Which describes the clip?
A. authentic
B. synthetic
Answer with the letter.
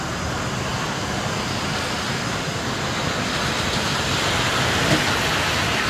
A